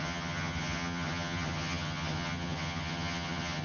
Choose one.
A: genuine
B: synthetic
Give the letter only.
B